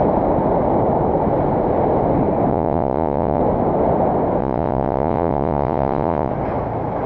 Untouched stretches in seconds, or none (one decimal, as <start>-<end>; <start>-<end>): 0.0-2.5; 3.4-4.4; 6.3-7.1